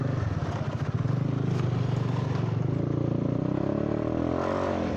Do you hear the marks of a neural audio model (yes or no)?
no